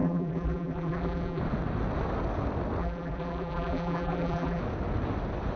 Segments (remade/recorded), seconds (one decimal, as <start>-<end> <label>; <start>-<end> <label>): 0.0-1.4 remade; 1.4-2.8 recorded; 2.8-4.6 remade; 4.6-5.6 recorded